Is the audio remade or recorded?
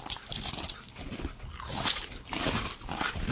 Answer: recorded